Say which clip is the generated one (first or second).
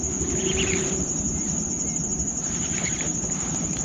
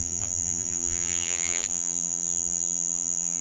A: second